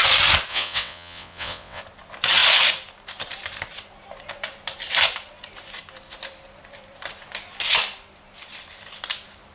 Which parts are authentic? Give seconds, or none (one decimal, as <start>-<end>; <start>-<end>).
0.0-0.5; 1.8-9.5